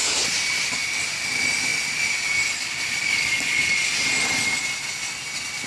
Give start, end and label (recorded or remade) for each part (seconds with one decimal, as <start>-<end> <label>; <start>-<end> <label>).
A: 0.0-5.7 recorded